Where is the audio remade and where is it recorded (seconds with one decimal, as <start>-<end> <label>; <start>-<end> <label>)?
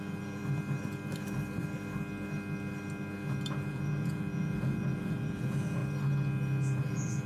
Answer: 0.0-0.4 remade; 0.4-3.7 recorded; 3.7-5.8 remade; 5.8-6.8 recorded; 6.8-7.3 remade